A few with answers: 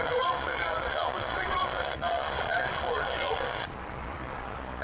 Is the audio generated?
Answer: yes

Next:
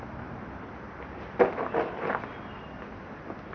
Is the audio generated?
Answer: no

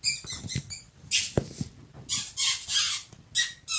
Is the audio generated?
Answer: no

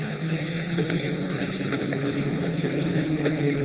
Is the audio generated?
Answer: yes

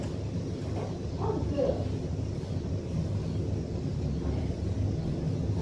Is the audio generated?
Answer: no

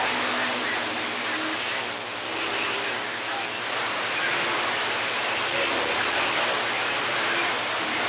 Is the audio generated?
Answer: no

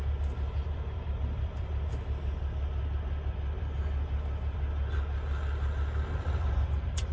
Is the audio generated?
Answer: yes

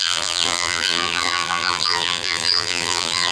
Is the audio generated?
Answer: yes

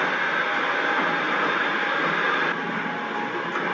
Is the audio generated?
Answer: no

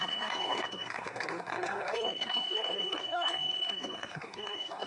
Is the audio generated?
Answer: yes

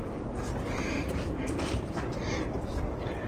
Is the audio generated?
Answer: no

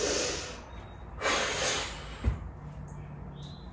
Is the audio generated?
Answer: no